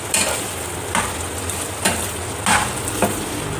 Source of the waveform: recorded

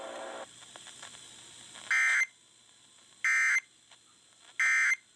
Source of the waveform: recorded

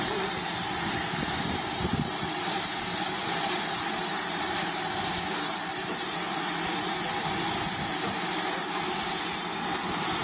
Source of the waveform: remade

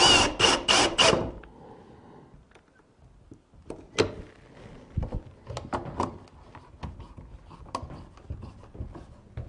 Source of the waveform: recorded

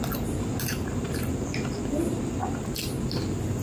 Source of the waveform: recorded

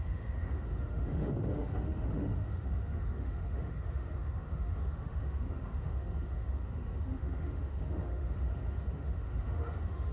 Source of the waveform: remade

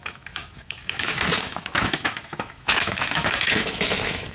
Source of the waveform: remade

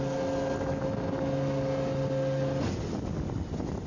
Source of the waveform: recorded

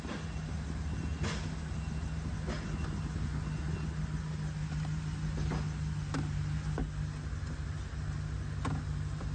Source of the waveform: recorded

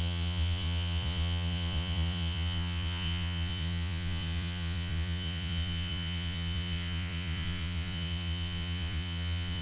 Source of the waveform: remade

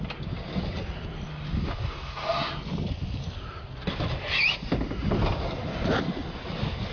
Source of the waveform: recorded